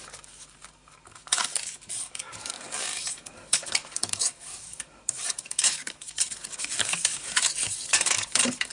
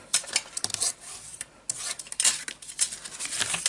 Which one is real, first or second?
second